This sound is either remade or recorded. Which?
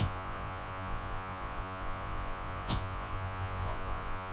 remade